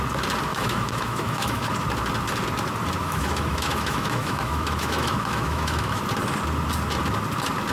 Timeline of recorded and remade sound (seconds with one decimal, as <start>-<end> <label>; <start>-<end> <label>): 0.0-0.5 recorded; 0.5-1.7 remade; 1.7-3.0 recorded; 3.0-6.0 remade; 6.0-7.7 recorded